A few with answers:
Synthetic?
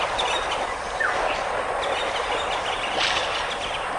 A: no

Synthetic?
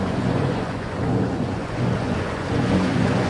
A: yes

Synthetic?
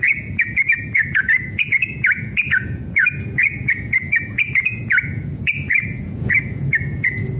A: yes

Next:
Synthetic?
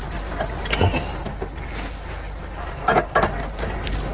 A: no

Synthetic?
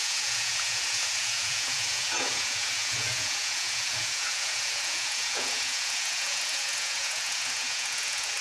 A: yes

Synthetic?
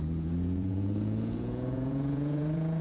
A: yes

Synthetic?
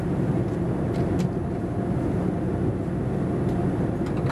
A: no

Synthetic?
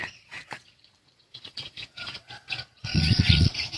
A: yes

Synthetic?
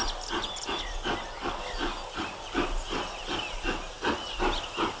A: no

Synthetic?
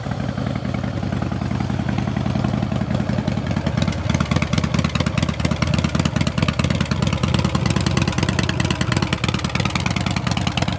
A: no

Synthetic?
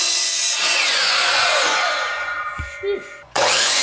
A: yes